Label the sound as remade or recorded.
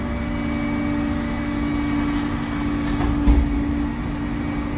recorded